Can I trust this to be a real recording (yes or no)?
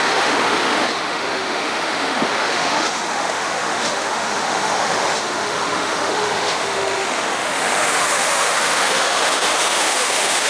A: no